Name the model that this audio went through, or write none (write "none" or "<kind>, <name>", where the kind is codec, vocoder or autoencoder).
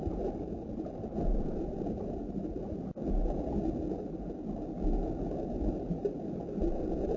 none